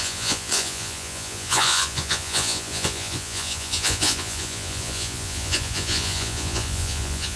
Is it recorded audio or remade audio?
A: remade